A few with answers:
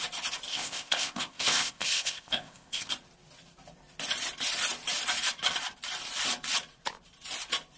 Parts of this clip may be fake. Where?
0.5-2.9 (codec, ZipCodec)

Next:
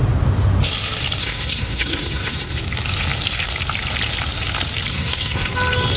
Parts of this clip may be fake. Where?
1.2-2.6 (codec, SNAC); 4.9-5.5

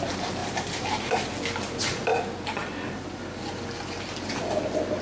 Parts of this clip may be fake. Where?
0.4-1.3 (vocoder, BigVGAN v2)